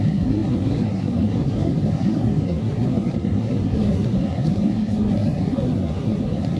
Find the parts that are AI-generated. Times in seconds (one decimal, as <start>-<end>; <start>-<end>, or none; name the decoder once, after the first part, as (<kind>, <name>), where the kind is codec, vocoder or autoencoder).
0.0-6.6 (codec, SNAC)